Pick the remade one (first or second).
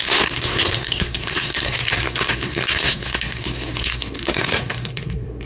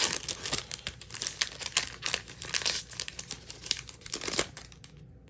first